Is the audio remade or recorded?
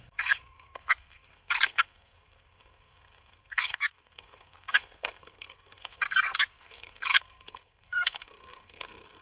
remade